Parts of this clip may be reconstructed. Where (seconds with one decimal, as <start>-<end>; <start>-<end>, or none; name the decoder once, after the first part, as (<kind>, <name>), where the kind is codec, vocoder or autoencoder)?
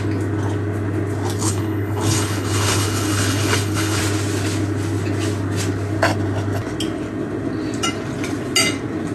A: 1.4-4.0 (codec, HILCodec)